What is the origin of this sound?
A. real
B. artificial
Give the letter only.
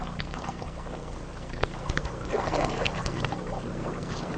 B